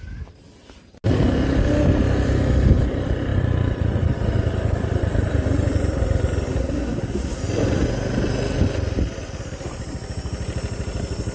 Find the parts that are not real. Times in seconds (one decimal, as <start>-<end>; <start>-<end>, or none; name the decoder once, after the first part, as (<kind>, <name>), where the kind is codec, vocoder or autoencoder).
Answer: 6.6-7.4 (codec, SNAC)